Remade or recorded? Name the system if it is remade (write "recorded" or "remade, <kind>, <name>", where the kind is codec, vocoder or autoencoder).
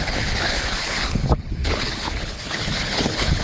remade, codec, HILCodec